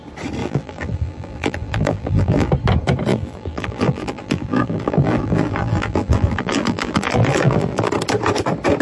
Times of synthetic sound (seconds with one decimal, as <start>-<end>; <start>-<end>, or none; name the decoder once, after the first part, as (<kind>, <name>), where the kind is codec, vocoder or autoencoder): 0.4-2.5 (vocoder, BigVGAN v2); 3.1-7.9